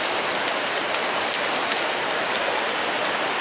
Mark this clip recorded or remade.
recorded